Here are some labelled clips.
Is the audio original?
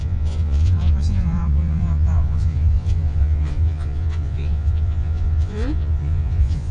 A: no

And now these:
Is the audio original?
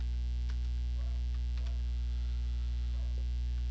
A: yes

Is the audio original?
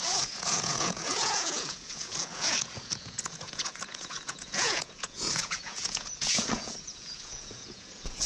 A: no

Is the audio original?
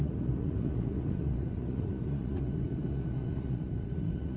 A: no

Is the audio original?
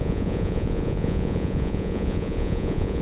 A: no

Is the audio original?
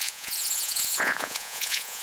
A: no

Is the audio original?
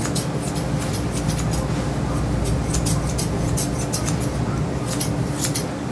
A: yes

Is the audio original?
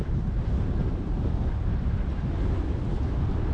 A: yes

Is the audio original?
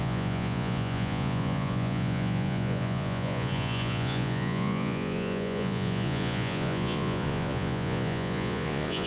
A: no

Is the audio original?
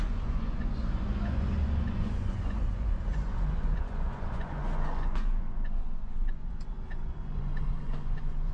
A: no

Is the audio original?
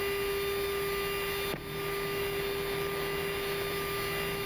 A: yes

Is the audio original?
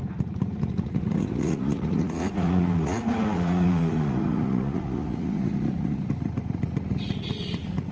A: no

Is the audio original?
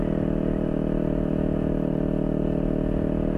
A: yes